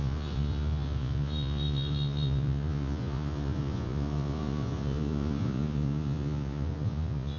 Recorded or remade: remade